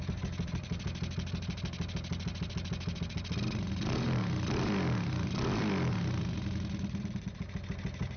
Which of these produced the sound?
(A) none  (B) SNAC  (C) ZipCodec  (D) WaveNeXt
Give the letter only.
A